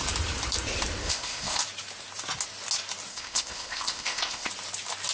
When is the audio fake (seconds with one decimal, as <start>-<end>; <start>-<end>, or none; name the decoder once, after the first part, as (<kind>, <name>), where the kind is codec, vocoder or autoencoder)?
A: 1.0-1.6 (codec, ZipCodec); 3.1-4.5